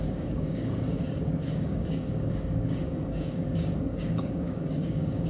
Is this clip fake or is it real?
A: fake